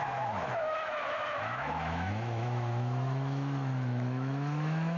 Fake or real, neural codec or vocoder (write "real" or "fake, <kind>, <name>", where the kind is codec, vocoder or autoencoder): fake, autoencoder, DAC-VAE